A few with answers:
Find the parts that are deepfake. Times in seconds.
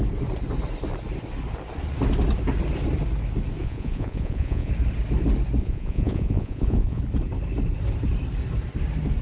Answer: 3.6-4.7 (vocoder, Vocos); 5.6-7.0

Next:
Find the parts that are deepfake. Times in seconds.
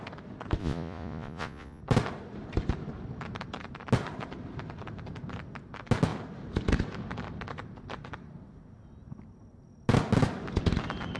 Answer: 0.6-1.8 (vocoder, Vocos)